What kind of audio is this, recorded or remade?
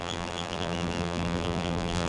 remade